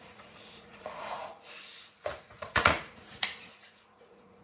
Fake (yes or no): yes